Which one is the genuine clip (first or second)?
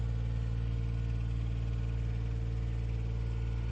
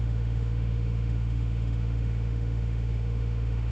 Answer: first